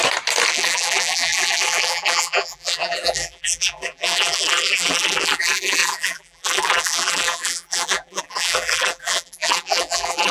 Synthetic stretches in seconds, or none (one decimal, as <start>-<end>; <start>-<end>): 0.5-10.3